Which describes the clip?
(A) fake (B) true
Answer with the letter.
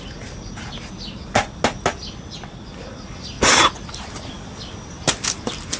B